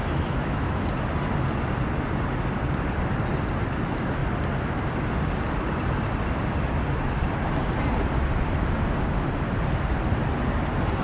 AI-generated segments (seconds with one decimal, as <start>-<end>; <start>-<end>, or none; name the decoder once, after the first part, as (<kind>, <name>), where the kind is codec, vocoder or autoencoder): 0.0-0.8 (autoencoder, DAC-VAE)

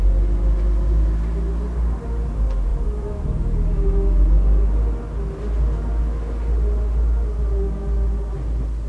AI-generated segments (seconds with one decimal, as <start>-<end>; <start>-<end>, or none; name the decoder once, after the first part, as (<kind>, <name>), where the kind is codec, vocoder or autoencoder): none

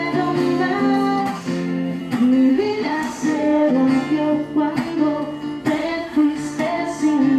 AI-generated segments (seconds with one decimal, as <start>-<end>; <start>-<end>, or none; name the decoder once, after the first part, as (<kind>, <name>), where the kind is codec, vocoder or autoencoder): 1.2-2.0 (autoencoder, DAC-VAE); 2.5-3.7; 5.8-6.6

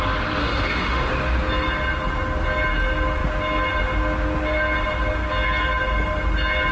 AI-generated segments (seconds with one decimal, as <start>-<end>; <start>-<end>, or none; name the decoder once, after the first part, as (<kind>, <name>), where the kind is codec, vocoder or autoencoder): 0.4-1.1 (autoencoder, DAC-VAE)

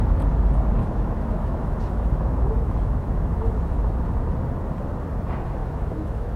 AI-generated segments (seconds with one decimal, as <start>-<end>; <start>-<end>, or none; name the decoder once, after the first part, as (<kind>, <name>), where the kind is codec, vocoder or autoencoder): 0.8-3.9 (autoencoder, DAC-VAE); 5.6-6.4

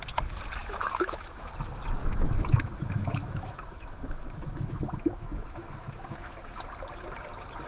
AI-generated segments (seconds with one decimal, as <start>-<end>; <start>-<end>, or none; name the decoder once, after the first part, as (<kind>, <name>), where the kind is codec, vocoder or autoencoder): 0.6-1.5 (autoencoder, DAC-VAE); 2.0-6.6

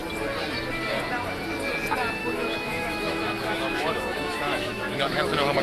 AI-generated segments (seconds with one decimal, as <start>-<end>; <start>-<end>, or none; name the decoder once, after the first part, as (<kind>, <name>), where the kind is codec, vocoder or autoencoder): 2.2-5.6 (autoencoder, DAC-VAE)

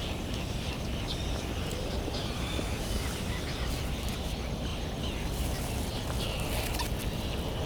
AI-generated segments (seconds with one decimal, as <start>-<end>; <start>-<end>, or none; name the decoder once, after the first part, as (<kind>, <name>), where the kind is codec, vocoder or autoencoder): none